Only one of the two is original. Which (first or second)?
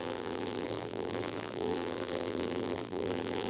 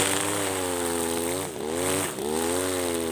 second